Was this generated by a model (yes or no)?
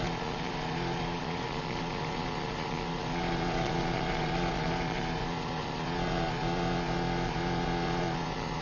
yes